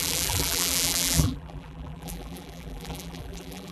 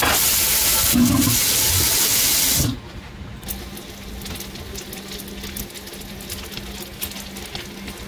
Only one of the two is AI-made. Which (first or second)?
first